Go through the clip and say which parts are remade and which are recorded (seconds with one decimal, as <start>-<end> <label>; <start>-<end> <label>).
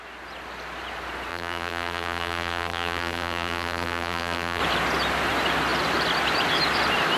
0.0-1.3 recorded; 1.3-4.6 remade; 4.6-7.2 recorded